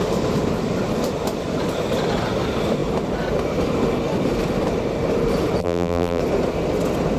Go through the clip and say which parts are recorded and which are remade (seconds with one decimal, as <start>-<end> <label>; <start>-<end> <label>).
0.0-5.6 recorded; 5.6-6.2 remade; 6.2-7.2 recorded